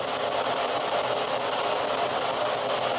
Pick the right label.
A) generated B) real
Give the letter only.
B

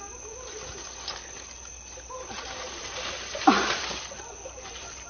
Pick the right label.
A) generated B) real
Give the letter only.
B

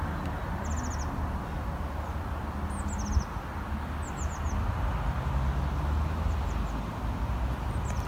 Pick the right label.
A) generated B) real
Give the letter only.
B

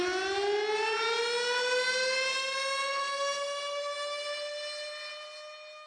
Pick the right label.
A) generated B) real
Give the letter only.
B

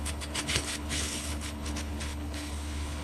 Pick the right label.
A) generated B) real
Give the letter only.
A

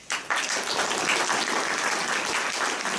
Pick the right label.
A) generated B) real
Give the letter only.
B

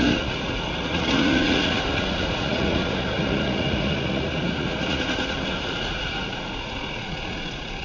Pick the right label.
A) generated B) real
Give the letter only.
A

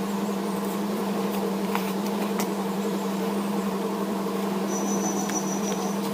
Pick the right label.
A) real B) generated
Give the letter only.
B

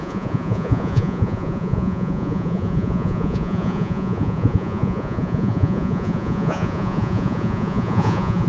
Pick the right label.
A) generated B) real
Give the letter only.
A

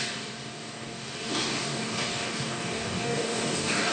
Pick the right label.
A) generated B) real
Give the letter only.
A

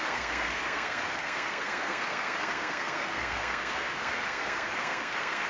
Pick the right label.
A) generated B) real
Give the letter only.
A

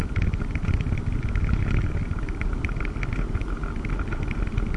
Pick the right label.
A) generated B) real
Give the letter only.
B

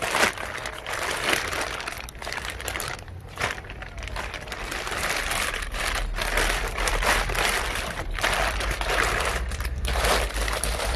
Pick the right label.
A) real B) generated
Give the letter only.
B